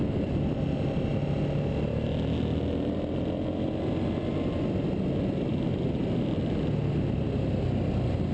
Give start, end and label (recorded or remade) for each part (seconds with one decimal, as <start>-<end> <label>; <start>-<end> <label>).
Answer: 0.0-8.3 recorded

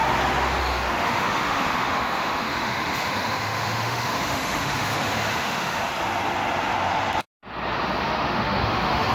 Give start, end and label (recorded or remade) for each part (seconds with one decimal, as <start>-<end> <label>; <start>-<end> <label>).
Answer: 0.0-0.6 recorded; 0.6-5.9 remade; 5.9-8.0 recorded; 8.0-9.1 remade

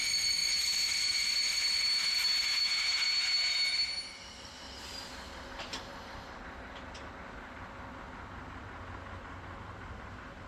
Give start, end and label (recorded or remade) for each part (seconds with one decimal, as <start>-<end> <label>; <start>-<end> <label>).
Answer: 0.0-5.7 recorded; 5.7-6.8 remade; 6.8-10.5 recorded

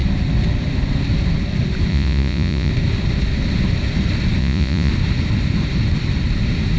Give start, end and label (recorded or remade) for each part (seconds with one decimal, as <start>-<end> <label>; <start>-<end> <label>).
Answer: 0.0-1.9 recorded; 1.9-2.7 remade; 2.7-4.4 recorded; 4.4-4.9 remade; 4.9-6.8 recorded

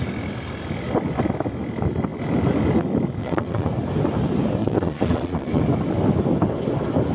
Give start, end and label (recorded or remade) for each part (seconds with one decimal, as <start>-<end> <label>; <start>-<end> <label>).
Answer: 0.0-3.2 recorded; 3.2-3.7 remade; 3.7-4.6 recorded; 4.6-5.6 remade; 5.6-7.1 recorded

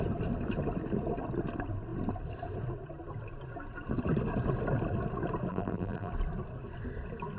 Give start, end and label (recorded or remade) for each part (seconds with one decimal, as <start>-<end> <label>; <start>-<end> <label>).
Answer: 0.0-5.5 recorded; 5.5-6.1 remade; 6.1-7.4 recorded

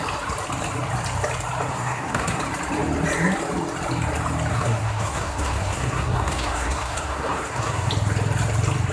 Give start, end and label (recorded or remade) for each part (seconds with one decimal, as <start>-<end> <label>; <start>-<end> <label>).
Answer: 0.0-1.7 recorded; 1.7-2.4 remade; 2.4-4.5 recorded; 4.5-7.9 remade; 7.9-8.9 recorded

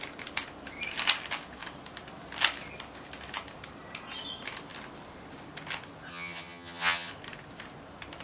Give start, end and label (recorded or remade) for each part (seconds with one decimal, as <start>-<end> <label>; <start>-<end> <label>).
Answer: 0.0-6.1 recorded; 6.1-7.1 remade; 7.1-8.2 recorded